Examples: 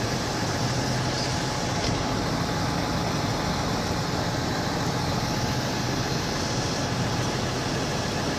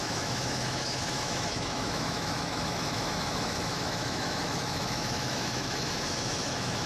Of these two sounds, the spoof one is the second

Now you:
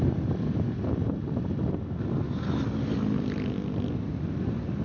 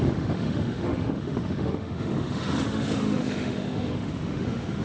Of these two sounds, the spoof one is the second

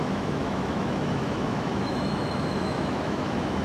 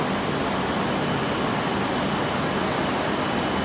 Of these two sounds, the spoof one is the first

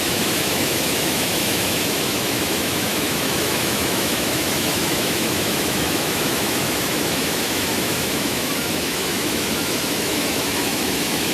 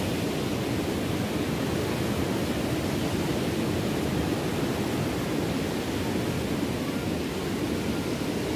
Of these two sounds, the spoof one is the first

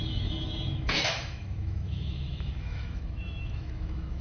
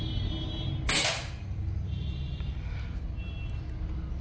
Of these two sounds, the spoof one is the first